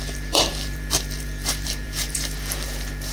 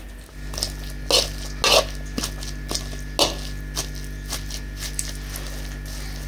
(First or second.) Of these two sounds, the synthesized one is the first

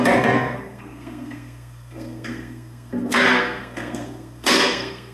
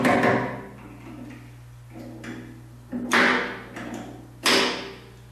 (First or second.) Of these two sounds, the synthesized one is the first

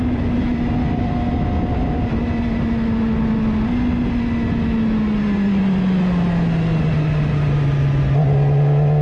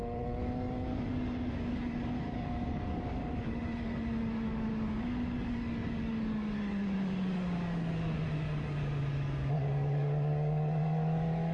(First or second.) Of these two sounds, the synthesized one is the second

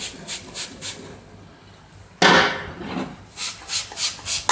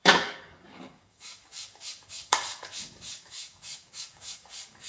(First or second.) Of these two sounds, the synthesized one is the second